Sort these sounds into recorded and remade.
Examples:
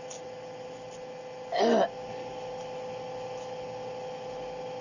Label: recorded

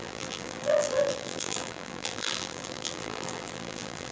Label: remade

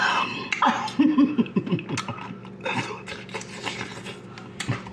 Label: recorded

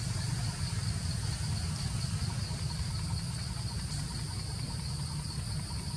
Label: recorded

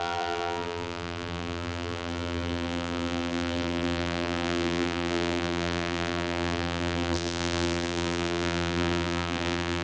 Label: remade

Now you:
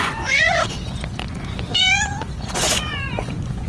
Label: remade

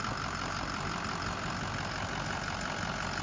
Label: recorded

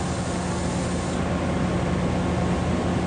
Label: recorded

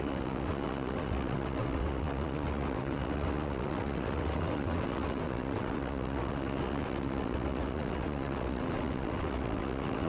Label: remade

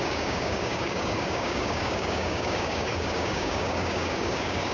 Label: remade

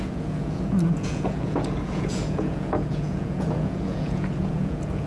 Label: remade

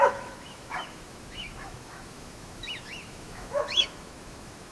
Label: remade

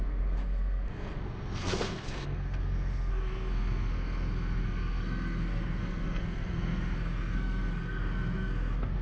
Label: remade